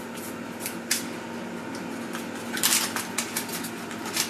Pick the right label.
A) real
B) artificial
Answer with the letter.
A